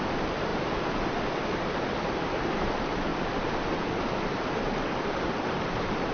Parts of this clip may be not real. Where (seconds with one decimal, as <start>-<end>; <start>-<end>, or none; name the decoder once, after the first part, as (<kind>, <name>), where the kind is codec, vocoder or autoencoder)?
0.0-0.5 (vocoder, BigVGAN v2); 1.7-3.1; 5.1-6.1